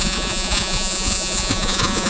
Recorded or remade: remade